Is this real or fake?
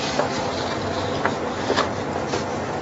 real